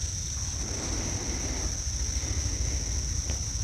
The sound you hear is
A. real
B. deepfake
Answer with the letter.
A